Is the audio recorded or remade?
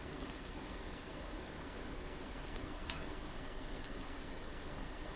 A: remade